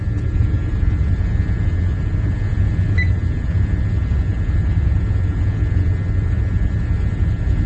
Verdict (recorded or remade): recorded